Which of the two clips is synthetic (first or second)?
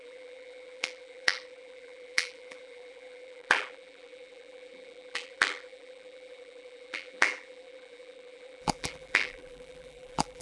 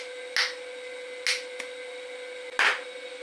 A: first